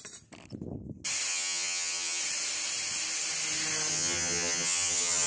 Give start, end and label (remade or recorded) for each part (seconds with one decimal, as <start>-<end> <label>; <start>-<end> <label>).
0.0-1.3 recorded; 1.3-2.2 remade; 2.2-3.9 recorded; 3.9-5.3 remade